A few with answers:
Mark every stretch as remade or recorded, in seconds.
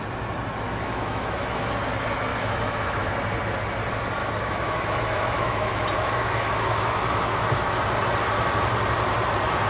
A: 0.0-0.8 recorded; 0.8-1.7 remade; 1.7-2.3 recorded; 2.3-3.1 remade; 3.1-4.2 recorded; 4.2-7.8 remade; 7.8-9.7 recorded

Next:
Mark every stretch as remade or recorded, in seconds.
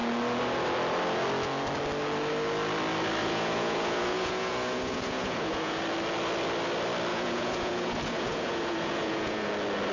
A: 0.0-3.2 recorded; 3.2-5.8 remade; 5.8-7.1 recorded; 7.1-9.5 remade; 9.5-9.9 recorded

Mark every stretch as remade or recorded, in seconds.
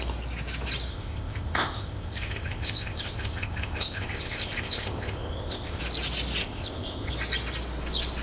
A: 0.0-0.9 recorded; 0.9-5.8 remade; 5.8-6.4 recorded; 6.4-7.1 remade; 7.1-8.2 recorded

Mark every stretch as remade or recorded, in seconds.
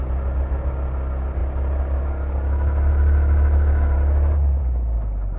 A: 0.0-5.4 recorded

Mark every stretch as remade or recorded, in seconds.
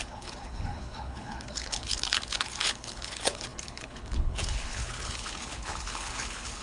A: 0.0-6.6 remade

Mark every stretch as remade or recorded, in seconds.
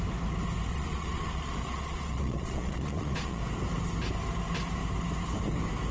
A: 0.0-0.7 recorded; 0.7-3.4 remade; 3.4-5.9 recorded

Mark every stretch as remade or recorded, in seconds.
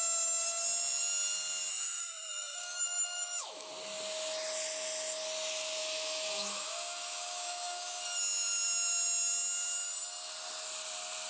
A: 0.0-1.7 recorded; 1.7-3.7 remade; 3.7-5.8 recorded; 5.8-8.0 remade; 8.0-11.3 recorded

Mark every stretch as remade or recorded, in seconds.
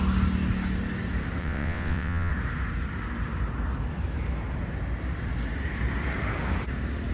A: 0.0-1.4 recorded; 1.4-2.3 remade; 2.3-7.1 recorded